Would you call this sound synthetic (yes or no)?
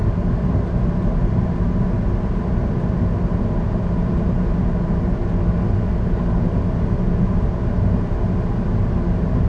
no